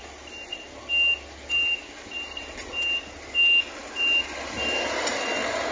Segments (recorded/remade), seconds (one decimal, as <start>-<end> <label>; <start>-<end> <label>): 0.0-5.7 recorded